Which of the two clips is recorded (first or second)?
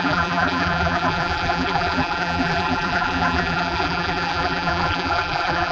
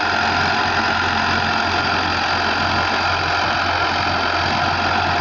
second